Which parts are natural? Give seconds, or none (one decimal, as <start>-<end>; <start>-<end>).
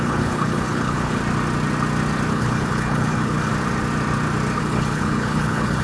1.2-2.3; 3.5-4.6